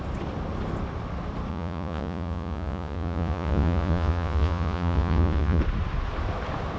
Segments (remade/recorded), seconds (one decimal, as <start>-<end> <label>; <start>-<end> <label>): 0.0-1.5 recorded; 1.5-5.6 remade; 5.6-6.8 recorded